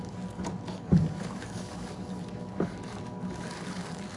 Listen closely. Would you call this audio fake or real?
fake